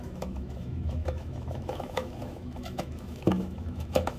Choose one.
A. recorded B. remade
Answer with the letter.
B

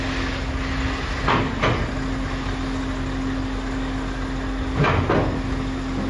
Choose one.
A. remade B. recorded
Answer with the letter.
B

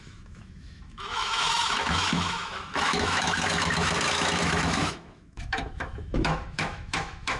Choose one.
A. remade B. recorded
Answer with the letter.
A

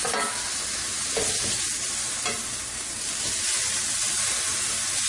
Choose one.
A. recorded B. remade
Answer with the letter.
A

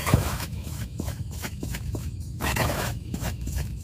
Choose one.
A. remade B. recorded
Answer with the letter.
A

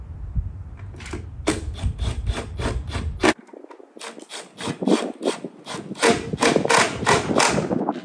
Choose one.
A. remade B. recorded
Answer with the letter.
B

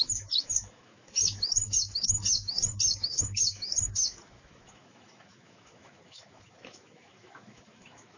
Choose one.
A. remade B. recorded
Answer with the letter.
A